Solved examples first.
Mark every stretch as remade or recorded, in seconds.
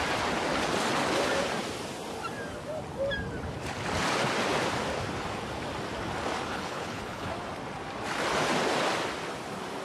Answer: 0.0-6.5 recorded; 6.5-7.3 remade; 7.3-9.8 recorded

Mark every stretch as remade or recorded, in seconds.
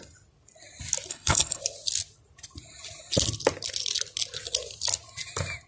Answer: 0.0-1.1 recorded; 1.1-1.6 remade; 1.6-5.7 recorded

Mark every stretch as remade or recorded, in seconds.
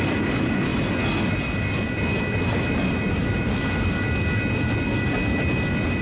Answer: 0.0-6.0 recorded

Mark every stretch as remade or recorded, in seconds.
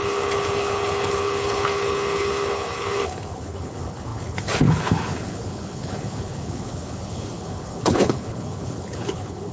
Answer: 0.0-9.5 remade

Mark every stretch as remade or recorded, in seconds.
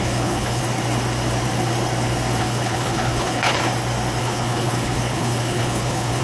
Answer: 0.0-0.6 remade; 0.6-2.4 recorded; 2.4-3.6 remade; 3.6-4.2 recorded; 4.2-6.2 remade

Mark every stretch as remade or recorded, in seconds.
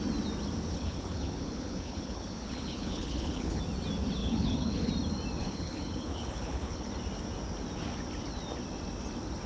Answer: 0.0-0.7 recorded; 0.7-3.6 remade; 3.6-4.2 recorded; 4.2-4.9 remade; 4.9-5.4 recorded; 5.4-6.9 remade; 6.9-9.5 recorded